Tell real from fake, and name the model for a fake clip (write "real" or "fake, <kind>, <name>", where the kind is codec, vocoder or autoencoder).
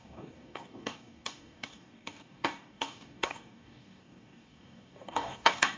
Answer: fake, codec, DAC